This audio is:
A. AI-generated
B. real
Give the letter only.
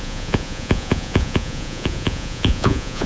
A